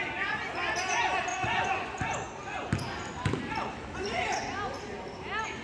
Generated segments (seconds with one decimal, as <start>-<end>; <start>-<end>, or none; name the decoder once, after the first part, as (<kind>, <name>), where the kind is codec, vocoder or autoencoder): 1.3-2.0 (vocoder, Vocos)